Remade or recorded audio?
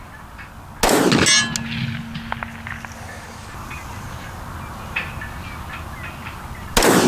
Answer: recorded